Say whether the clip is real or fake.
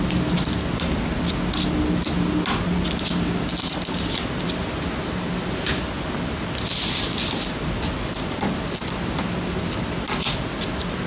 real